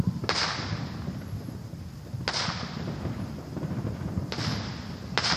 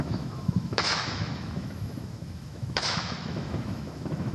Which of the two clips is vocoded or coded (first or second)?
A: second